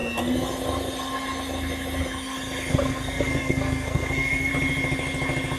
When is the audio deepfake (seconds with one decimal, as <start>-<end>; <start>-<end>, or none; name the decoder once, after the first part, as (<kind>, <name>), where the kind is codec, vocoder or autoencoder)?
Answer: 2.7-4.5 (codec, SNAC)